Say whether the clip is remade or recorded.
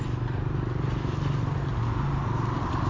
recorded